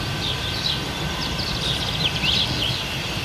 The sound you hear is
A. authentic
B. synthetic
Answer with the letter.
A